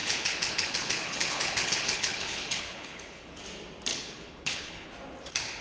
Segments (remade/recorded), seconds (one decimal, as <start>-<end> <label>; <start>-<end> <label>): 0.0-3.4 remade; 3.4-3.9 recorded; 3.9-4.9 remade; 4.9-5.6 recorded